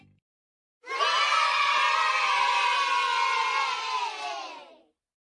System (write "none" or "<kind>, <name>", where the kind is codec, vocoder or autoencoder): none